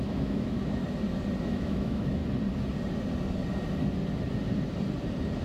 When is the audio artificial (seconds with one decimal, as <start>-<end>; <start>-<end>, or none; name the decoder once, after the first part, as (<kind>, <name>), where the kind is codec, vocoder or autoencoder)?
0.0-0.8 (autoencoder, DAC-VAE); 1.4-2.2